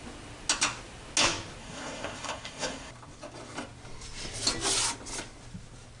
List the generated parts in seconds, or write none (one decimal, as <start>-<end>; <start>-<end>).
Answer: 1.6-2.9